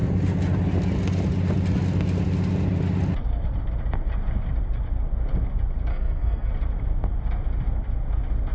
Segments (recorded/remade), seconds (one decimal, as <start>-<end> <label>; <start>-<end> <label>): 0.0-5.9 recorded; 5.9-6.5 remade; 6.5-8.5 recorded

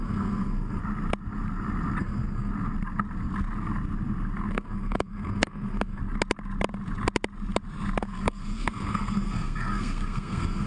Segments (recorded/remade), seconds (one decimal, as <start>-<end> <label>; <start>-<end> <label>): 0.0-0.8 remade; 0.8-2.0 recorded; 2.0-2.5 remade; 2.5-4.5 recorded; 4.5-6.0 remade; 6.0-8.0 recorded; 8.0-10.7 remade

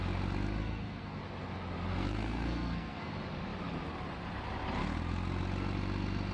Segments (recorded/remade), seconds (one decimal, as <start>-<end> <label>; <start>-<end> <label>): 0.0-0.6 recorded; 0.6-1.2 remade; 1.2-1.9 recorded; 1.9-3.1 remade; 3.1-6.3 recorded